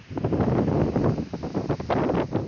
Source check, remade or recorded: recorded